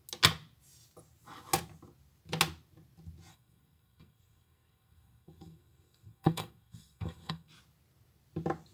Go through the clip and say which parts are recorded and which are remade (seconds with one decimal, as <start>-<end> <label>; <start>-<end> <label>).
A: 0.0-3.3 recorded; 3.3-7.5 remade; 7.5-8.7 recorded